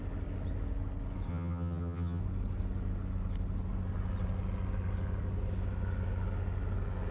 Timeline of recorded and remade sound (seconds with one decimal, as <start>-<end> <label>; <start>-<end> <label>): 0.0-1.3 recorded; 1.3-2.2 remade; 2.2-7.1 recorded